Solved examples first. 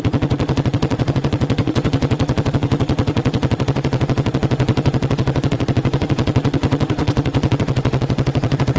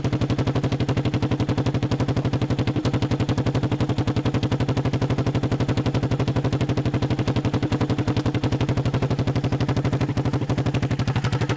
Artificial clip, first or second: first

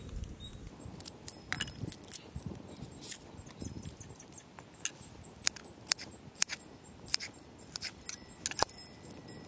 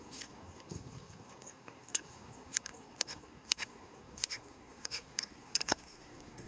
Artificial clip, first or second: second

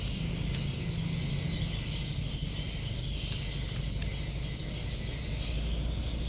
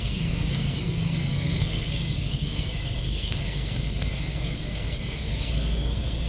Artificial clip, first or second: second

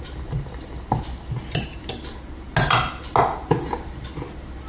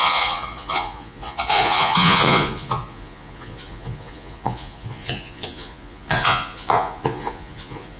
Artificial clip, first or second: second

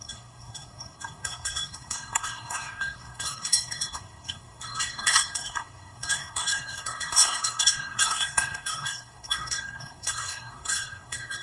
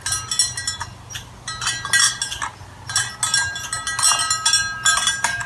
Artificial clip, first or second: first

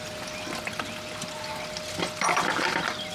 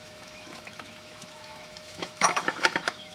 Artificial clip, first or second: second